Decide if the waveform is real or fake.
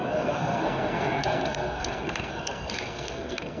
fake